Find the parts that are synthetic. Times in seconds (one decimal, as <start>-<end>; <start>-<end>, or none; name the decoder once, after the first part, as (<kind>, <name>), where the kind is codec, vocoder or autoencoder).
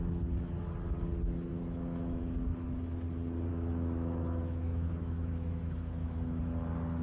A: 1.5-2.2 (autoencoder, DAC-VAE); 3.5-6.4